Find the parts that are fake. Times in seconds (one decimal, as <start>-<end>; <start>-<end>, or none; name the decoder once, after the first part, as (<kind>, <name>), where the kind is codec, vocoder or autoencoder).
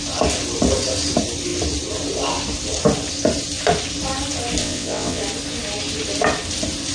4.6-5.2 (vocoder, WaveNeXt)